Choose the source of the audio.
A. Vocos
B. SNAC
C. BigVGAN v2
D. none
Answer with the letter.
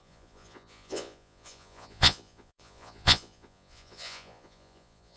A